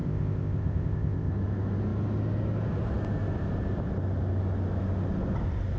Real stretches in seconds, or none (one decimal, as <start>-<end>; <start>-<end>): 1.3-5.8